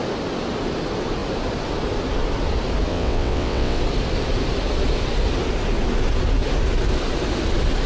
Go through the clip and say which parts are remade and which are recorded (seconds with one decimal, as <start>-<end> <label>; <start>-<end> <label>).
0.0-2.9 recorded; 2.9-3.8 remade; 3.8-7.9 recorded